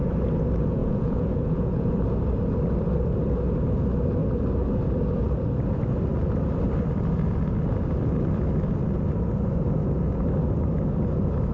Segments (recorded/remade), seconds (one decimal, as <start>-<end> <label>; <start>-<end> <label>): 0.0-0.8 recorded; 0.8-1.9 remade; 1.9-11.5 recorded